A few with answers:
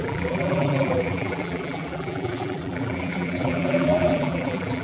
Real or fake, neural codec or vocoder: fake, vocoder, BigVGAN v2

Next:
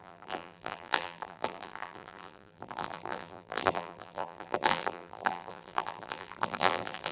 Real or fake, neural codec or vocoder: fake, vocoder, BigVGAN v2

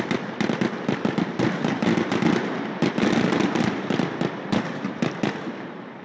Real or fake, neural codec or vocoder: fake, vocoder, BigVGAN v2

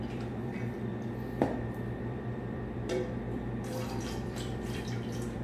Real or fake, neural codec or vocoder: fake, vocoder, BigVGAN v2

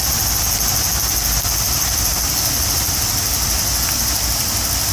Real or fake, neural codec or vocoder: real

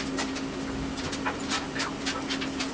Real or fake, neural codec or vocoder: real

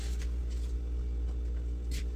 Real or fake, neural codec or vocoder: real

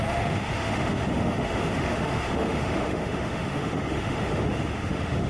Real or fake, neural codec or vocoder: fake, autoencoder, DAC-VAE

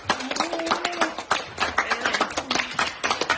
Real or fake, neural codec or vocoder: real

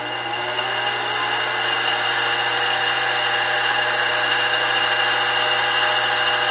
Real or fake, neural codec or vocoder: real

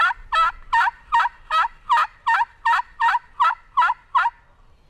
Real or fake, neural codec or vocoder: real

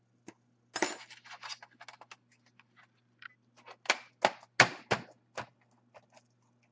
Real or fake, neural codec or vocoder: real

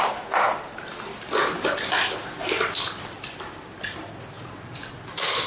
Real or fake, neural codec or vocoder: fake, vocoder, BigVGAN v2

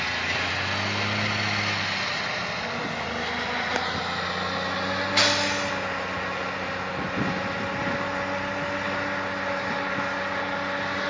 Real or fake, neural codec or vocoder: real